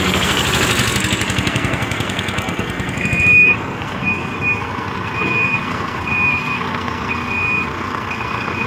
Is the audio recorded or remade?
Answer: remade